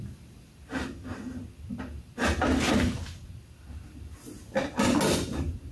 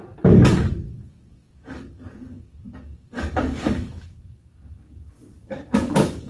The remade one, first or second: second